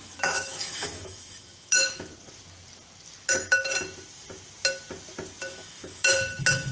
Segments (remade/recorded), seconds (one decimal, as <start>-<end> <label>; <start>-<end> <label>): 0.0-2.1 remade; 2.1-5.4 recorded; 5.4-6.7 remade